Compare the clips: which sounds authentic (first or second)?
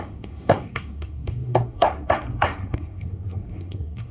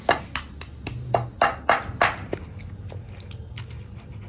second